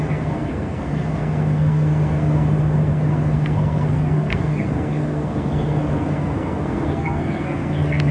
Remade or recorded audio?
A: remade